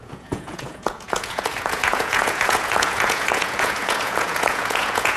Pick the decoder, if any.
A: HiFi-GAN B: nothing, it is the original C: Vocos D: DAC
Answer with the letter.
C